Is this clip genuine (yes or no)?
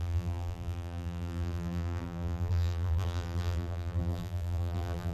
no